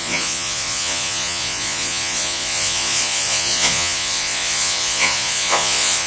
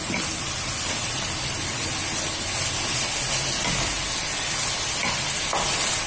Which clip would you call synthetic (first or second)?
first